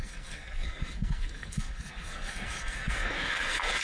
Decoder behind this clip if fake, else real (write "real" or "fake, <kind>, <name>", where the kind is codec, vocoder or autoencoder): fake, codec, SNAC